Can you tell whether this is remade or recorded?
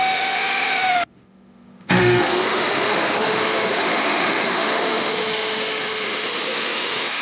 remade